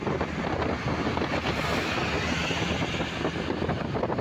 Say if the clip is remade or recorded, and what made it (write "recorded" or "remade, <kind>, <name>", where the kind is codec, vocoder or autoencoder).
recorded